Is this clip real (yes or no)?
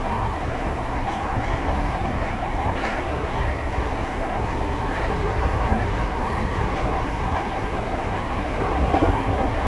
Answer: no